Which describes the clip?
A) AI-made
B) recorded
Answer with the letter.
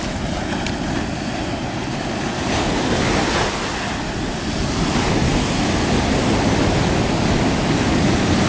B